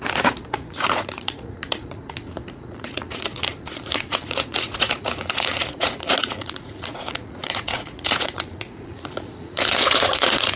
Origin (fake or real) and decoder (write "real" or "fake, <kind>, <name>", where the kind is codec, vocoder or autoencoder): fake, vocoder, Vocos